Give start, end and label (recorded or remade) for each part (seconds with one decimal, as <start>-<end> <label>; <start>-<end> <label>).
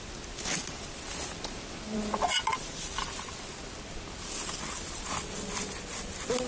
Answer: 0.0-0.6 recorded; 0.6-4.5 remade; 4.5-6.5 recorded